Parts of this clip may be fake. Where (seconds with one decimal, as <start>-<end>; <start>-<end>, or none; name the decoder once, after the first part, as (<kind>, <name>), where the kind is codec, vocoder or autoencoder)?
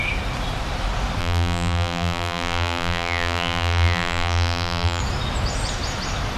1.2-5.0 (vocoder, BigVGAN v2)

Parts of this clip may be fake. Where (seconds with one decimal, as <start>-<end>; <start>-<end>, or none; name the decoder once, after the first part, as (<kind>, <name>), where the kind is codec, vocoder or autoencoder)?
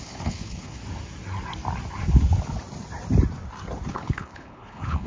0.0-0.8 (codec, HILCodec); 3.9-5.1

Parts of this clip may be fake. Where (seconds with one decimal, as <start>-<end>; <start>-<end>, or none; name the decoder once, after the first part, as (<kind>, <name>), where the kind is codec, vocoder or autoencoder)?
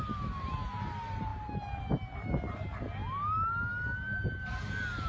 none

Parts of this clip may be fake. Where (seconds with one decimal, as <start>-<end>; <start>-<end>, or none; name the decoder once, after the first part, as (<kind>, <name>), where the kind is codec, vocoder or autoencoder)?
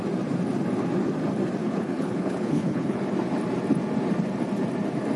1.6-3.0 (codec, HILCodec)